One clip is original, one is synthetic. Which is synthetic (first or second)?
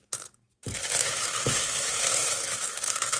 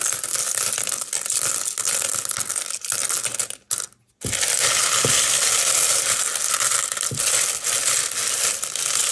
first